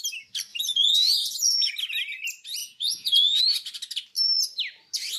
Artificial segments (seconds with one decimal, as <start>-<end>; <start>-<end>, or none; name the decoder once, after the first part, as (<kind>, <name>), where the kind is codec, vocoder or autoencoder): 0.5-1.7 (vocoder, Vocos); 2.6-3.4

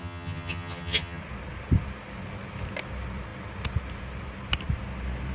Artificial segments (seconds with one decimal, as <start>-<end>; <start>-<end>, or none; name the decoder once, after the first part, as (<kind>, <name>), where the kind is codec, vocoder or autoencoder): 0.0-1.2 (vocoder, HiFi-GAN)

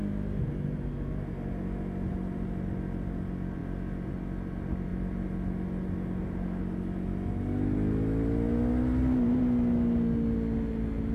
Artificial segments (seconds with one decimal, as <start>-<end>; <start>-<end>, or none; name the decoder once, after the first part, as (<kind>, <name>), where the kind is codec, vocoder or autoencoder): none

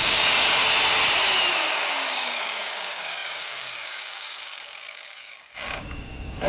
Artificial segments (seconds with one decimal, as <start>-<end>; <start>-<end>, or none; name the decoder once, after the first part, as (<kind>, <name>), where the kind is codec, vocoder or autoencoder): 0.0-0.6 (codec, DAC); 1.5-6.5